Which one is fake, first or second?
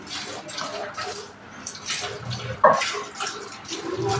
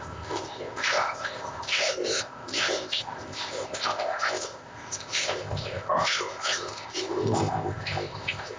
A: second